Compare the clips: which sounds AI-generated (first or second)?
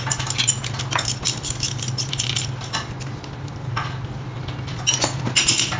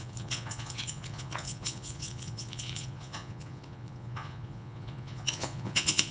second